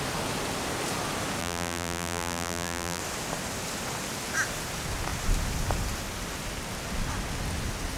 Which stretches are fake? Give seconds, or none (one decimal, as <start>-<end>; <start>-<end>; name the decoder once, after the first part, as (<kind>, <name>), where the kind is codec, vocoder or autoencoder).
1.4-3.0 (vocoder, BigVGAN v2)